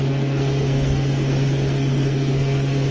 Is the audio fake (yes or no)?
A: yes